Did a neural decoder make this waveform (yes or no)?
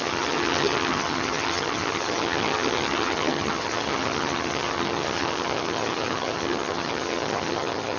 yes